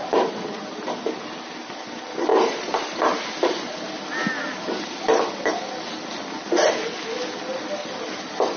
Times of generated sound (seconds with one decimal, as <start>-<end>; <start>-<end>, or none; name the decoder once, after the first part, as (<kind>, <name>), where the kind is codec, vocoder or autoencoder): 2.3-3.0 (vocoder, BigVGAN v2)